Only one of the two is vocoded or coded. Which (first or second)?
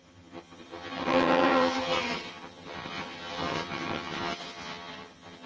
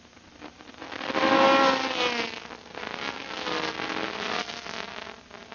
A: first